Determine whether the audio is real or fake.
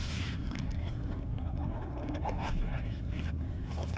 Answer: fake